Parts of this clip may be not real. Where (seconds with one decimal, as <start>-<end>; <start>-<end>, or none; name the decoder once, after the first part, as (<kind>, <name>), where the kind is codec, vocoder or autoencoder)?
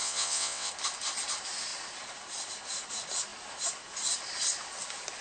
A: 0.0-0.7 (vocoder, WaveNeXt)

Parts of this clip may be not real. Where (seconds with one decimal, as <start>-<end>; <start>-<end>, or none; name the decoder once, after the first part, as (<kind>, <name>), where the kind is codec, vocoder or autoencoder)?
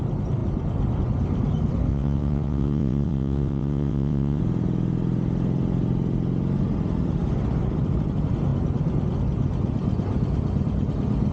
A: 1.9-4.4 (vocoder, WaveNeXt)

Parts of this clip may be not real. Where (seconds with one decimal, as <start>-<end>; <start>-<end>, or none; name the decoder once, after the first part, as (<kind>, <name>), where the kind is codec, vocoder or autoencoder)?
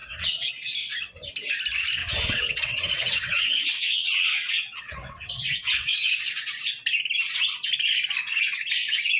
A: 0.0-0.5 (vocoder, WaveNeXt); 2.0-6.1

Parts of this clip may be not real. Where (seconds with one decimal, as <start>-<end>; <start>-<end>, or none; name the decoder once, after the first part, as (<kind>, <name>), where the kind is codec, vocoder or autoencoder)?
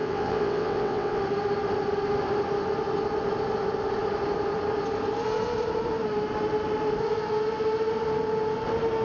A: 0.0-1.2 (vocoder, WaveNeXt)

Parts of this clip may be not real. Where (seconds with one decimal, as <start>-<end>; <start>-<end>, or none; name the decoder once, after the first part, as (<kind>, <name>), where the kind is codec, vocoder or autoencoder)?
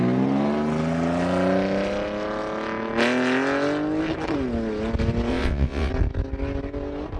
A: 5.3-5.9 (vocoder, WaveNeXt)